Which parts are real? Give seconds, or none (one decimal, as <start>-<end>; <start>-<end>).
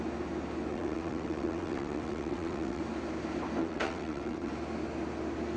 0.0-0.7; 2.8-3.6; 4.5-5.6